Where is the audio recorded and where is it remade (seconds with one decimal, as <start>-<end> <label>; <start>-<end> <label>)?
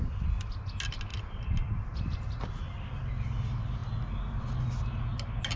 0.0-1.1 recorded; 1.1-3.0 remade; 3.0-5.6 recorded